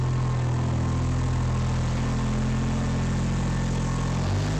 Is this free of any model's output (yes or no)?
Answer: yes